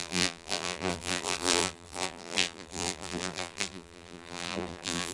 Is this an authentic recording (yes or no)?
no